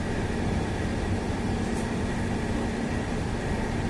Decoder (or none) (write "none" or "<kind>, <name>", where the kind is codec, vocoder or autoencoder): none